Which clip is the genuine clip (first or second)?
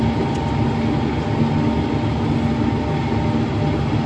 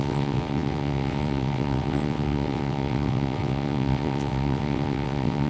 first